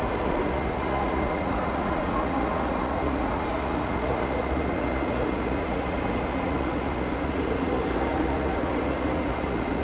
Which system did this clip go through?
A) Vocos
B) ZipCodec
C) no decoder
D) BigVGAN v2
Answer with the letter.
A